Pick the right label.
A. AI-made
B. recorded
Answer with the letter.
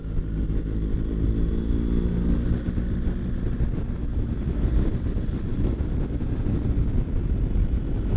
B